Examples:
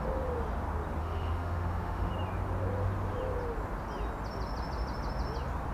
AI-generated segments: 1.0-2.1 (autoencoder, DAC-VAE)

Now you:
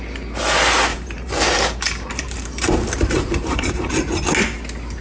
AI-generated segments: 0.9-3.9 (vocoder, BigVGAN v2)

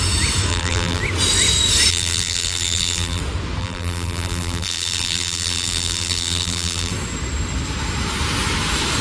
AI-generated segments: 0.5-1.0 (vocoder, BigVGAN v2); 1.9-3.2; 3.6-6.9

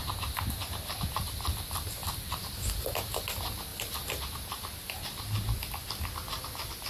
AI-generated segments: 0.0-0.5 (vocoder, BigVGAN v2); 2.0-2.9

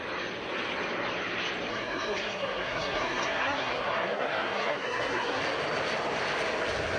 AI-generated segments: 1.7-5.4 (codec, SNAC)

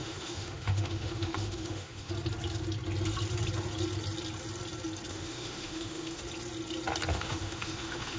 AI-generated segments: 0.0-2.1 (autoencoder, DAC-VAE); 5.1-6.2; 7.1-8.2

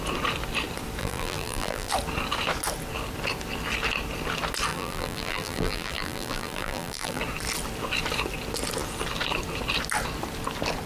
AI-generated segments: 1.0-1.9 (vocoder, BigVGAN v2); 4.7-7.2

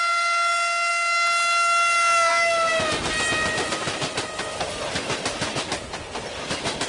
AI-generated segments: none